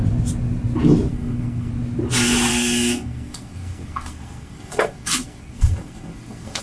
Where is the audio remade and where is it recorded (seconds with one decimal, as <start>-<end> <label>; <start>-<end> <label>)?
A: 0.0-1.1 recorded; 1.1-1.7 remade; 1.7-2.5 recorded; 2.5-6.6 remade